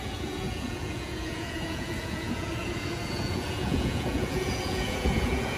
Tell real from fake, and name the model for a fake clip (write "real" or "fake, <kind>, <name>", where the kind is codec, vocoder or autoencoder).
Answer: fake, vocoder, Vocos